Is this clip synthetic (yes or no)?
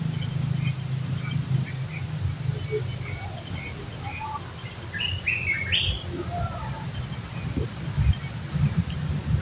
no